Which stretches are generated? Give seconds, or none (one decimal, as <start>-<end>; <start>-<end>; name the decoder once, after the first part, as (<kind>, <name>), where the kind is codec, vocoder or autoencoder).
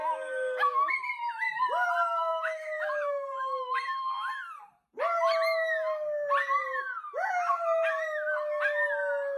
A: 0.0-0.9 (autoencoder, DAC-VAE); 2.3-4.3